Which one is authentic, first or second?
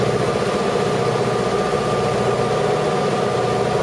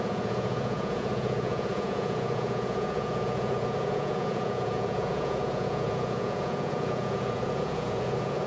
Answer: first